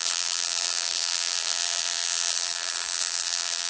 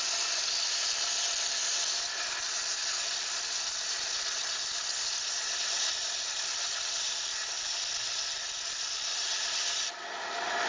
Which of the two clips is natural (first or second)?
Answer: second